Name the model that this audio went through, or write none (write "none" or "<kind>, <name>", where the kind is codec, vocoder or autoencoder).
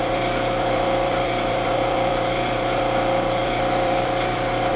vocoder, BigVGAN v2